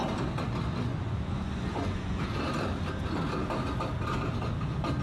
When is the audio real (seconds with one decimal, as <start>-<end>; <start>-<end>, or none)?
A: 0.0-0.9; 2.2-5.0